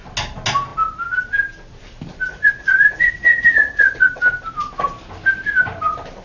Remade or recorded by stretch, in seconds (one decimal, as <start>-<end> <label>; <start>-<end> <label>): 0.0-2.3 recorded; 2.3-4.2 remade; 4.2-6.2 recorded